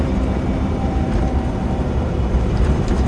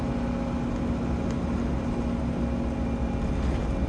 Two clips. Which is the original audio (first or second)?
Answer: second